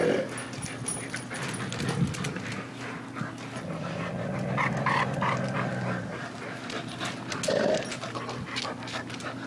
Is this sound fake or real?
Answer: real